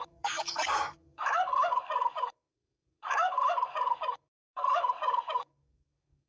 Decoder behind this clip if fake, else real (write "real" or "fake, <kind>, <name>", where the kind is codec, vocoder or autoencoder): fake, codec, DAC